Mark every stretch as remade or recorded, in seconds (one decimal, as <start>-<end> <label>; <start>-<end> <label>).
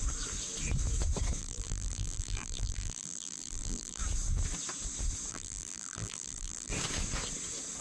0.0-1.4 recorded; 1.4-4.0 remade; 4.0-5.3 recorded; 5.3-6.7 remade; 6.7-7.8 recorded